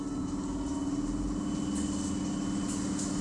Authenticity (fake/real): real